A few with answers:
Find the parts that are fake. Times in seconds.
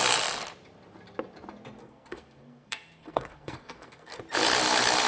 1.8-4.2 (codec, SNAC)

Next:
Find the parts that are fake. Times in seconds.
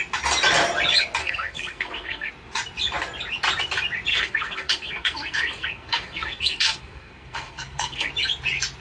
1.2-2.3 (codec, SNAC); 4.1-8.1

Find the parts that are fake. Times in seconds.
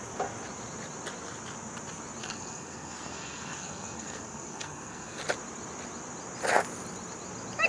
2.2-5.2 (codec, SNAC)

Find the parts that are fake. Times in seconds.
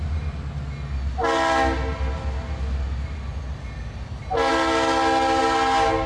none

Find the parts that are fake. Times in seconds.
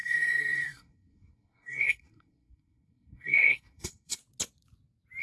0.0-4.2 (codec, SNAC)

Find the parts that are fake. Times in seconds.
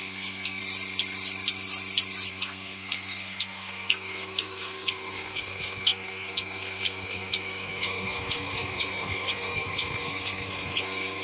0.0-0.6 (codec, SNAC); 2.3-11.2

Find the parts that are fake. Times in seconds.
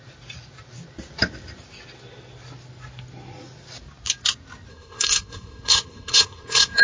4.7-6.8 (codec, SNAC)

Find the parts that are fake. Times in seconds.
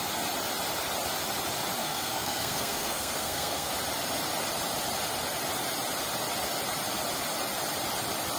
1.8-3.7 (codec, SNAC)